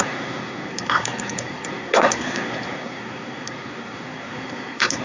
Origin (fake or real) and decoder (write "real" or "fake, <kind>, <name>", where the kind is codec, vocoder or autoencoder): fake, codec, SNAC